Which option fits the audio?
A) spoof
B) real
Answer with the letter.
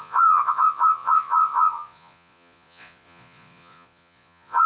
A